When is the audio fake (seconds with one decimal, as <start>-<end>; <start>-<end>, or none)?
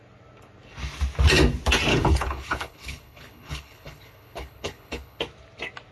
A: 1.9-5.2